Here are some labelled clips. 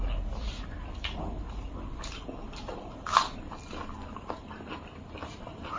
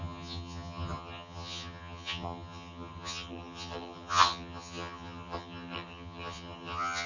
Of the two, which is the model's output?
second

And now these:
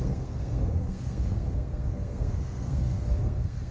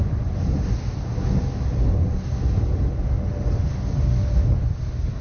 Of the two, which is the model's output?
first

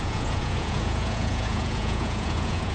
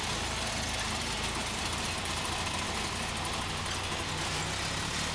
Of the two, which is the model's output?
first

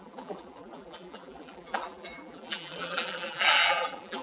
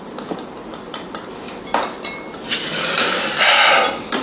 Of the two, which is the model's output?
first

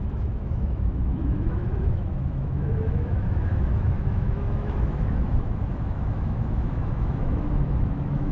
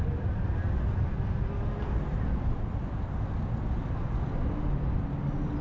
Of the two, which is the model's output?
first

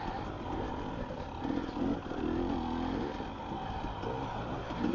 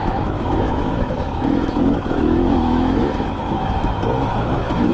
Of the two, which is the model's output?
second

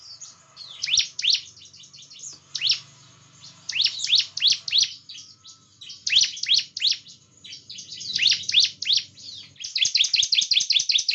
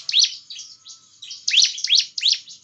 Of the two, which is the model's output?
second